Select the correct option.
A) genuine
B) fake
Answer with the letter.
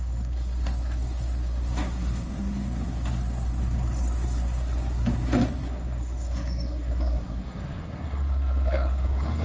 B